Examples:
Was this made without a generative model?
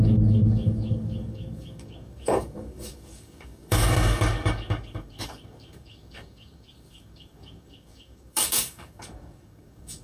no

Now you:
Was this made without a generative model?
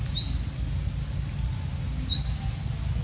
yes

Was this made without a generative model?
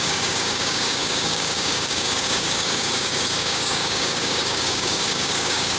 no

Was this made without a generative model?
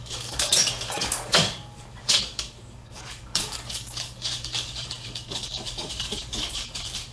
no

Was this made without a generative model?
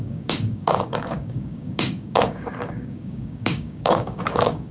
no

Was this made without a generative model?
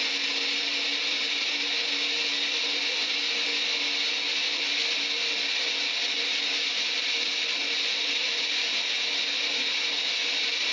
yes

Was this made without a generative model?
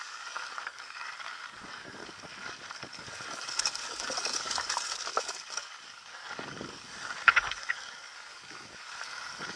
no